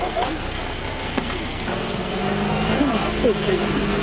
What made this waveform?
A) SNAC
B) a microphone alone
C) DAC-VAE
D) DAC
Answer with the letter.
A